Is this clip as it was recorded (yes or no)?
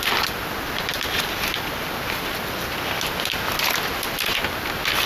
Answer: yes